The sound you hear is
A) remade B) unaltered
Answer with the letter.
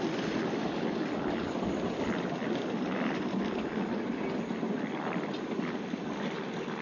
B